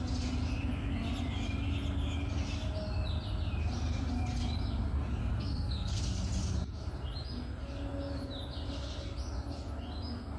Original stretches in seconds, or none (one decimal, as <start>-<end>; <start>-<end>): 0.0-5.2; 6.0-10.4